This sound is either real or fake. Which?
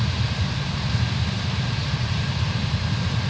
fake